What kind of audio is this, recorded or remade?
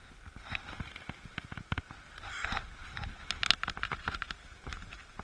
recorded